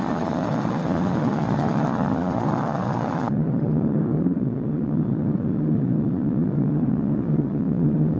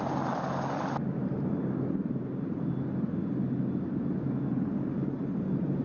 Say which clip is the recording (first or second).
second